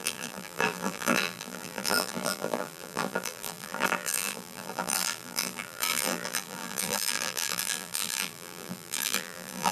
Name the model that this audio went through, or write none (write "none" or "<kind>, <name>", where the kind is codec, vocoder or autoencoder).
vocoder, BigVGAN v2